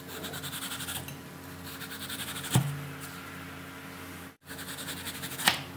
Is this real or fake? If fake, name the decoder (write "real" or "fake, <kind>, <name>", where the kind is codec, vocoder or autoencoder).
real